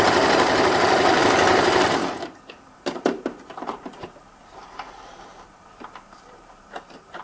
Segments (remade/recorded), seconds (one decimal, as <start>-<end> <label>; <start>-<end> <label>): 0.0-2.0 remade; 2.0-2.5 recorded; 2.5-7.2 remade